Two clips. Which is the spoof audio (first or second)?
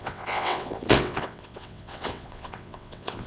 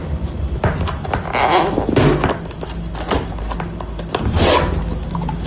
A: first